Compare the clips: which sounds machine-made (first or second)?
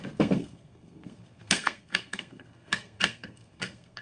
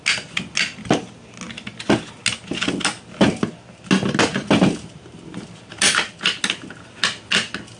first